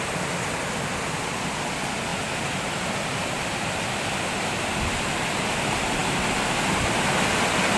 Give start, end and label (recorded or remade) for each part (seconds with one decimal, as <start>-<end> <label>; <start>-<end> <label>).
0.0-7.8 recorded